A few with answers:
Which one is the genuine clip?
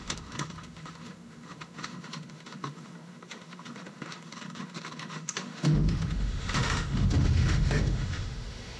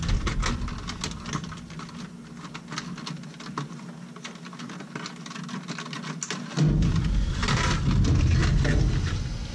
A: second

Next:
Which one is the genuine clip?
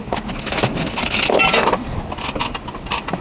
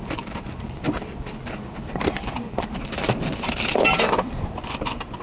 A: first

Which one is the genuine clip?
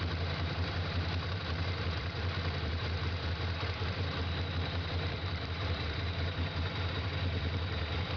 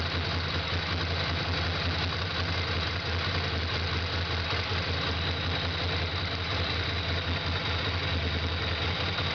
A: second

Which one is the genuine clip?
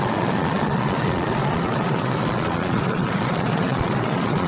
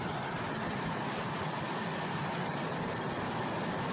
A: second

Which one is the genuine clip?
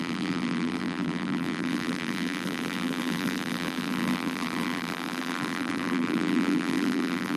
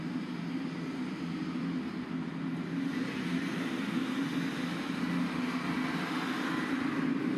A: second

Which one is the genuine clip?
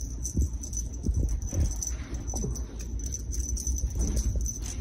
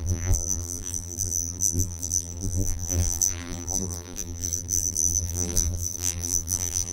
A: first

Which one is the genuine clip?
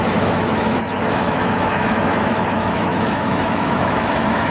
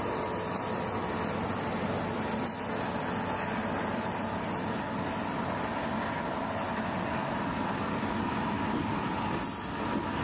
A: second